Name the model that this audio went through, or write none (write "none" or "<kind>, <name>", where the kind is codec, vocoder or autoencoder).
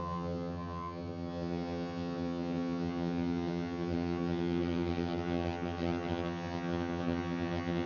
vocoder, HiFi-GAN